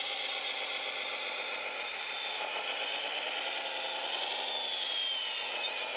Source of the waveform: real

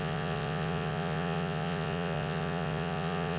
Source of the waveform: fake